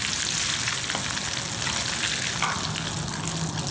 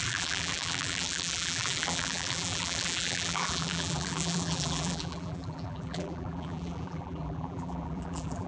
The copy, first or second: second